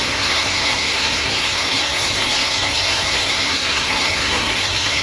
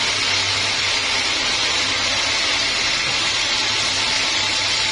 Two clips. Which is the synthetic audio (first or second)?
first